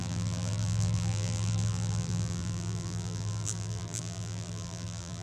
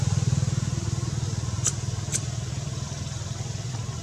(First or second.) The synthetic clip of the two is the first